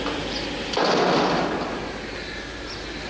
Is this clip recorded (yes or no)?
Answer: yes